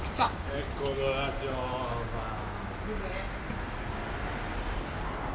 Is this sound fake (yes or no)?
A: no